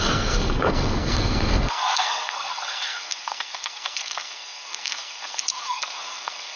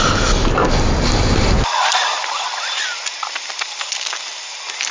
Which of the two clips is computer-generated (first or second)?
first